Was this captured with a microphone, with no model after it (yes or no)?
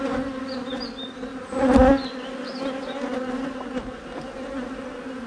yes